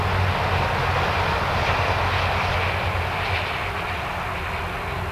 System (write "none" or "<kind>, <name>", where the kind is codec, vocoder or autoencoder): none